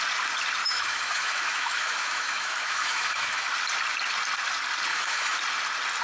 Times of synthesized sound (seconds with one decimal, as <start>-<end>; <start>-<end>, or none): 0.6-3.5; 4.9-5.4

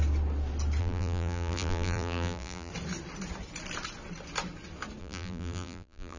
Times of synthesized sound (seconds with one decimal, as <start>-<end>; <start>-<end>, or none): 0.8-2.7; 5.0-6.2

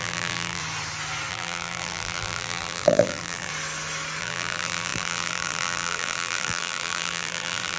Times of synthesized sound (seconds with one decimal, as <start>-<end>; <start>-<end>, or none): 0.0-0.6; 1.3-3.5; 4.2-7.8

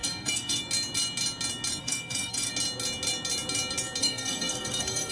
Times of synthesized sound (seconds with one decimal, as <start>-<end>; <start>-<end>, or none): 0.0-0.6; 1.8-2.5; 4.0-5.1

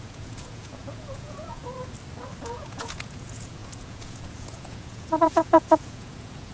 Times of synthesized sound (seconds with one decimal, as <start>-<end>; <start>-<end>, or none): 0.0-1.6; 2.4-6.5

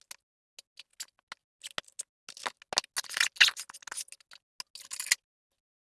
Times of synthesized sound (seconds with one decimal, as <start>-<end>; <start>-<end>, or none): none

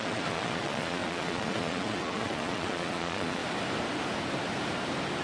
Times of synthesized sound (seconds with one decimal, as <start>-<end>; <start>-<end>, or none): 0.0-3.4